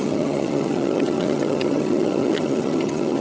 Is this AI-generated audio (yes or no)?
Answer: yes